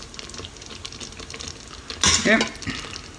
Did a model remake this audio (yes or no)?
no